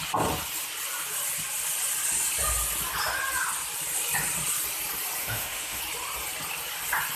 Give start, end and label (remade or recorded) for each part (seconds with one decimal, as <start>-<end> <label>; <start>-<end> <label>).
0.0-5.2 recorded; 5.2-5.8 remade; 5.8-7.2 recorded